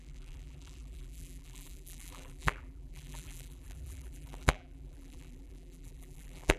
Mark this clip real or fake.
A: fake